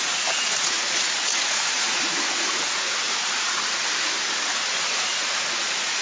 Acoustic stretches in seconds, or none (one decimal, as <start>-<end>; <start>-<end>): 3.8-4.9

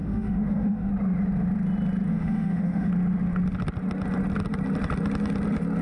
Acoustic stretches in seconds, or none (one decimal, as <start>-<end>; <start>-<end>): 0.9-2.1; 2.9-5.8

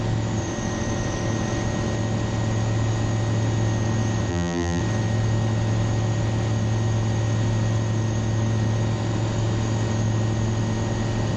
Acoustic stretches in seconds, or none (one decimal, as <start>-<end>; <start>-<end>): 0.0-4.3; 4.8-11.4